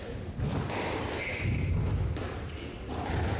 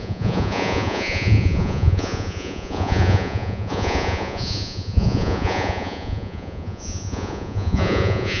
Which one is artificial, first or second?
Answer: second